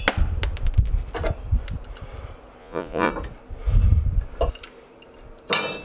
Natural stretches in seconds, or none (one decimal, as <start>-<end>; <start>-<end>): 0.0-2.6; 3.1-5.8